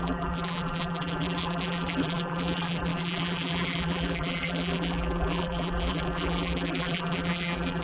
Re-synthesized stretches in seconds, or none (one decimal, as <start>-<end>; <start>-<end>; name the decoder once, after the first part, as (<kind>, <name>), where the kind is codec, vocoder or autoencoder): 0.0-7.8 (vocoder, BigVGAN v2)

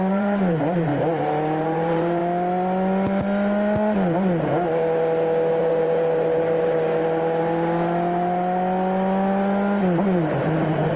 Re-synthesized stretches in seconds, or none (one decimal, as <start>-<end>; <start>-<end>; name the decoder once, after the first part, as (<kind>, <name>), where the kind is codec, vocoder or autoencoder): 0.0-0.9 (vocoder, BigVGAN v2); 1.6-2.2; 5.6-6.9; 10.0-11.0

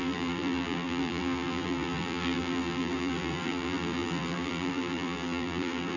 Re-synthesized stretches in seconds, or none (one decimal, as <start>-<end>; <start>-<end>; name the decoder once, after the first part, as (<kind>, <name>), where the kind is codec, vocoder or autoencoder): 0.0-6.0 (vocoder, BigVGAN v2)

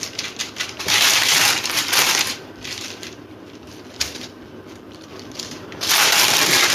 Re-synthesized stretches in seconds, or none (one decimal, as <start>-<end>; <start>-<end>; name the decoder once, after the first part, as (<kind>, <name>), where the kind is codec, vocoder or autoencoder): 0.0-6.7 (vocoder, BigVGAN v2)

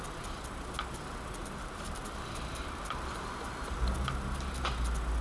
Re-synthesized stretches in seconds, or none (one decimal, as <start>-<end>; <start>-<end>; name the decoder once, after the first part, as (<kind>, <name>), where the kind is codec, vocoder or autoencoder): 1.4-3.3 (vocoder, BigVGAN v2)

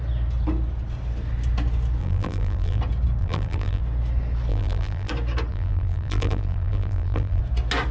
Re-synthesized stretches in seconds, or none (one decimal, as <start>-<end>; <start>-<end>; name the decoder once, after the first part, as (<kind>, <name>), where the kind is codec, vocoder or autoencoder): 2.0-2.8 (vocoder, BigVGAN v2); 3.2-3.8; 4.5-5.1; 5.5-7.4